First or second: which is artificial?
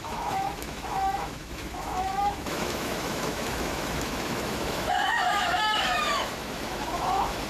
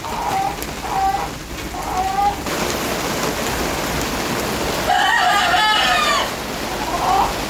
first